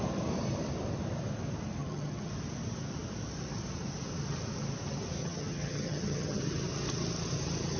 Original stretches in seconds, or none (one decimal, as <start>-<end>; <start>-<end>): 0.0-1.8; 2.3-5.2; 6.4-7.8